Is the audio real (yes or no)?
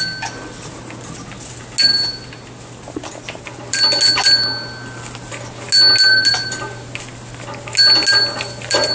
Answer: yes